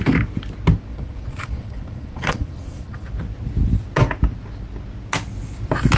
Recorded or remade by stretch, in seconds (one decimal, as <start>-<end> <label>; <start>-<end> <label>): 0.0-0.9 recorded; 0.9-3.1 remade; 3.1-6.0 recorded